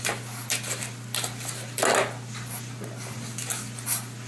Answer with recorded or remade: recorded